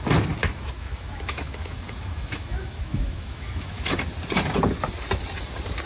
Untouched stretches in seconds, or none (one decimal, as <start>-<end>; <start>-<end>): 0.0-0.4; 3.9-5.9